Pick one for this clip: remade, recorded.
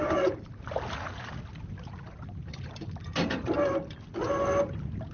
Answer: recorded